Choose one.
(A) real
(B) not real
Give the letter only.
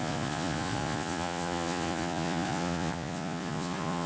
B